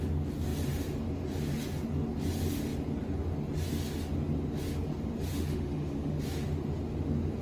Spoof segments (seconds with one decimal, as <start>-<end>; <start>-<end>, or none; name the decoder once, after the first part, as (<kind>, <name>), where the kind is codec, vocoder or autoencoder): 5.3-6.2 (autoencoder, DAC-VAE)

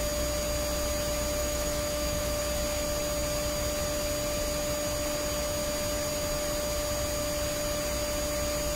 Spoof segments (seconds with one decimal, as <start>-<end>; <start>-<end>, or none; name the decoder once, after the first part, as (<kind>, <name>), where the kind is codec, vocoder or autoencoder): 1.4-2.4 (autoencoder, DAC-VAE)

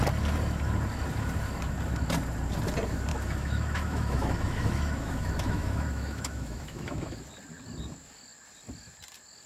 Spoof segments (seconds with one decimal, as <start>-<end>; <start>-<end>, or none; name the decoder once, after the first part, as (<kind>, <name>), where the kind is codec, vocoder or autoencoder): 3.1-7.2 (autoencoder, DAC-VAE)

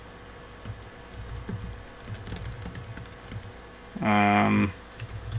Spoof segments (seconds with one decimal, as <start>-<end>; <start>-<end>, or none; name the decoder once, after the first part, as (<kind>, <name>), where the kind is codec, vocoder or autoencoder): 3.9-5.4 (autoencoder, DAC-VAE)